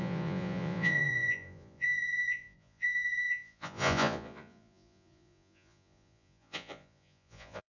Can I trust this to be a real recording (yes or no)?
no